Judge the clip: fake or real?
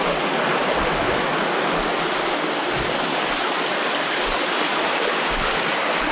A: real